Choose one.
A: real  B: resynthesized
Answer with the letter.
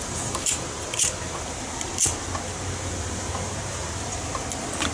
A